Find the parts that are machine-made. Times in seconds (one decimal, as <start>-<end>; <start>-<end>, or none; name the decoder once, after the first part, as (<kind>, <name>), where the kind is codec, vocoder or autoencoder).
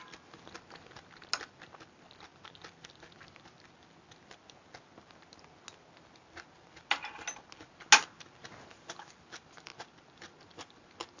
none